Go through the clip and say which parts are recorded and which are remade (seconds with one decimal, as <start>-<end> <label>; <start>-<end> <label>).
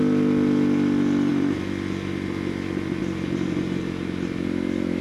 0.0-5.0 recorded